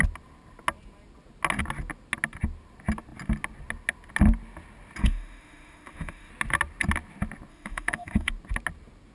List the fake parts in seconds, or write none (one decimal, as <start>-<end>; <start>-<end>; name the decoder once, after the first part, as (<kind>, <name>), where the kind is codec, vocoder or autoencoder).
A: 5.0-6.3 (autoencoder, DAC-VAE); 7.5-8.3